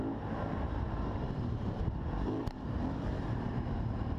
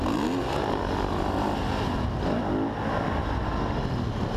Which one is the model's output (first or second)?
first